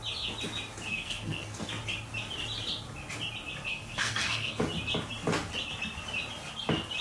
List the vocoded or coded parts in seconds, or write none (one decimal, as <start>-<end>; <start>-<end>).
0.9-1.7; 3.7-4.6